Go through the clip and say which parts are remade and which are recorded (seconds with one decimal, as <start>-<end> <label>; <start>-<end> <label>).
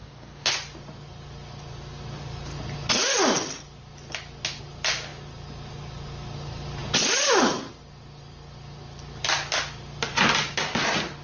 0.0-0.5 remade; 0.5-11.2 recorded